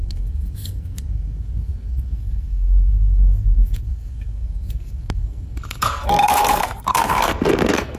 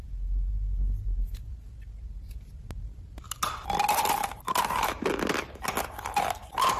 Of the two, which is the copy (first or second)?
first